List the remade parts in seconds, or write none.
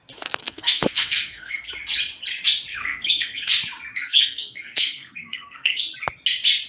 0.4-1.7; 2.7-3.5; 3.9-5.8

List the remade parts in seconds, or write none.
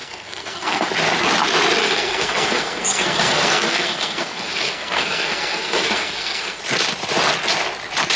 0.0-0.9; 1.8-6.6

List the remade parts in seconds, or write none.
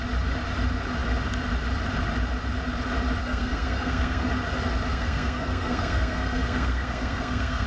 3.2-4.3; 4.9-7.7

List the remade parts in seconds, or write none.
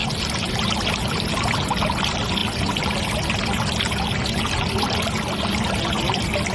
none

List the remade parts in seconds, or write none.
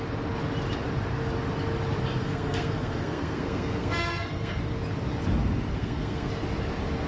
2.2-4.6; 5.7-6.3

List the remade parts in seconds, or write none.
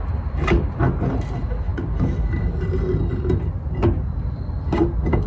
none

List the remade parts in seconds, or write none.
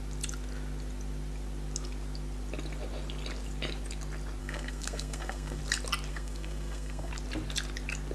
4.4-5.6; 6.1-7.1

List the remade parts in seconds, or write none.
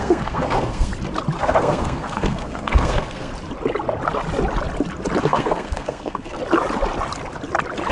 0.0-0.9; 1.4-3.3; 5.2-6.4